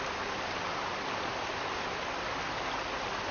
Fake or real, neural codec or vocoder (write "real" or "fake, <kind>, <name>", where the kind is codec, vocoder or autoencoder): real